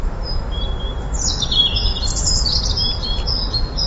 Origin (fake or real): fake